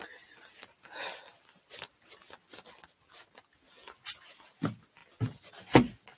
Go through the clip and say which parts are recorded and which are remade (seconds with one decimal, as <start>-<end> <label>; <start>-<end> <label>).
0.0-6.2 recorded